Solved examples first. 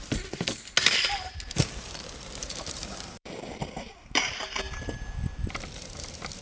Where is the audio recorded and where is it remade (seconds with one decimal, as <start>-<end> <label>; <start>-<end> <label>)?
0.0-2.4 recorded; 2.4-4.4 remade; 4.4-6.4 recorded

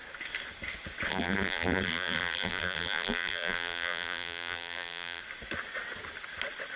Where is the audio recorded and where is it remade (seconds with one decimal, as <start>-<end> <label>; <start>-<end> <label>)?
0.0-1.1 recorded; 1.1-5.2 remade; 5.2-6.8 recorded

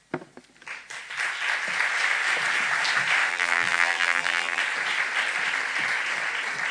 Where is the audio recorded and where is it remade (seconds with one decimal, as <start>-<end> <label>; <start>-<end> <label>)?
0.0-3.3 recorded; 3.3-4.6 remade; 4.6-6.7 recorded

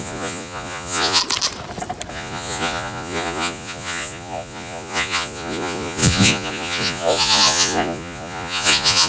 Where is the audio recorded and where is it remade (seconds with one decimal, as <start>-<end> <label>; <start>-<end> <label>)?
0.0-1.2 remade; 1.2-2.1 recorded; 2.1-9.1 remade

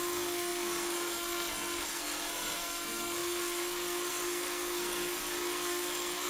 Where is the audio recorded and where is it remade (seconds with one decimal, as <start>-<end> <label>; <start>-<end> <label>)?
0.0-6.3 remade

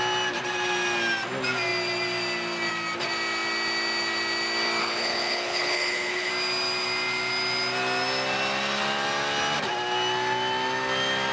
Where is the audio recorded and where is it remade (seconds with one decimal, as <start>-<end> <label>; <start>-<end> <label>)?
0.0-4.8 recorded; 4.8-6.3 remade; 6.3-11.3 recorded

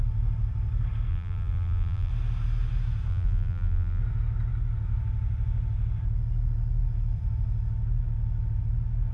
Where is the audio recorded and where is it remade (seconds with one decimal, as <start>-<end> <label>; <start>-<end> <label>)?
0.0-1.1 recorded; 1.1-2.1 remade; 2.1-3.1 recorded; 3.1-4.0 remade; 4.0-9.1 recorded

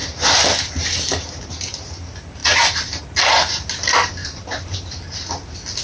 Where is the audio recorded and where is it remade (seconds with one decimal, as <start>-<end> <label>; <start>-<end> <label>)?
0.0-1.4 remade; 1.4-2.4 recorded; 2.4-3.0 remade; 3.0-4.2 recorded; 4.2-4.8 remade; 4.8-5.8 recorded